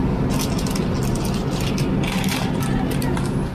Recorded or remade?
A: recorded